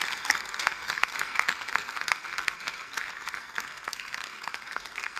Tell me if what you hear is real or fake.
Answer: fake